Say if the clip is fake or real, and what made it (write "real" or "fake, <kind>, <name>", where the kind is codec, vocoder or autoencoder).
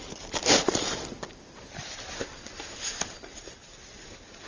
real